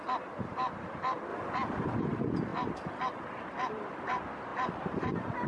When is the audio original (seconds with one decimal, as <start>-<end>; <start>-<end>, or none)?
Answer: 0.0-5.5

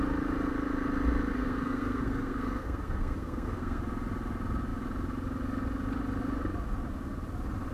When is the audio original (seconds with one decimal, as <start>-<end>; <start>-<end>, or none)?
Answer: 0.0-1.3; 3.8-7.7

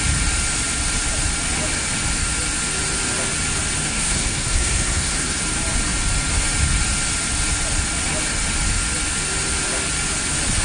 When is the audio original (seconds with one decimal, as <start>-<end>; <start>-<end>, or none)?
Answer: 0.0-3.8; 5.4-10.6

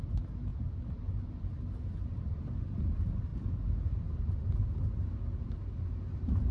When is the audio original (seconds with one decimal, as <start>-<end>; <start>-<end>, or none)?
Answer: 0.0-6.5

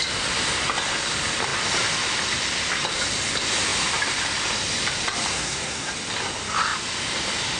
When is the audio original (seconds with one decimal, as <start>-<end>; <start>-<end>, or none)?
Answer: 0.0-5.3; 5.9-7.6

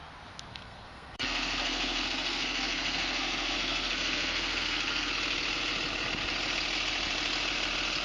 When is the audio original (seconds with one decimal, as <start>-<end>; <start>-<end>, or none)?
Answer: 0.0-0.5; 5.1-8.0

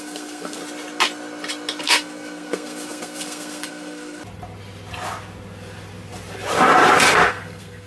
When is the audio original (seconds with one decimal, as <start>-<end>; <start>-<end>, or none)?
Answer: 0.6-1.8; 4.2-7.3

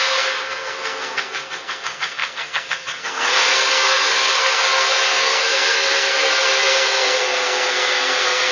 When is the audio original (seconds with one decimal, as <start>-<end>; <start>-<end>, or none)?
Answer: none